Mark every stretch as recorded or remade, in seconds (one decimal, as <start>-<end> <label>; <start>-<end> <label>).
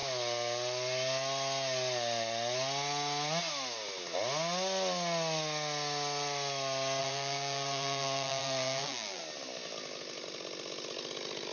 0.0-7.0 recorded; 7.0-9.2 remade; 9.2-11.5 recorded